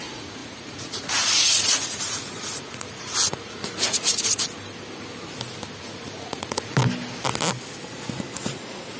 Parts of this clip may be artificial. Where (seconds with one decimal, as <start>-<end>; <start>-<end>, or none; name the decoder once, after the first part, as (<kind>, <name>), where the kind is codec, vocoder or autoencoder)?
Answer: 0.0-4.4 (vocoder, Vocos); 5.8-6.8; 8.5-9.0